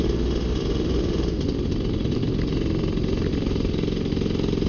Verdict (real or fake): real